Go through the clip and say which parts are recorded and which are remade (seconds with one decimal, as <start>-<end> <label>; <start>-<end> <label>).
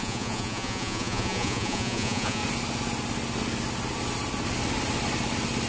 0.0-2.4 remade; 2.4-5.7 recorded